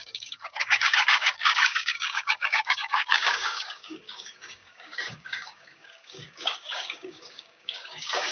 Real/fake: fake